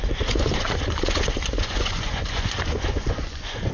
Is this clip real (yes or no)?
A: no